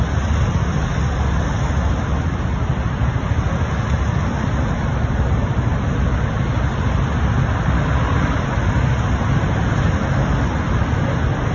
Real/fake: real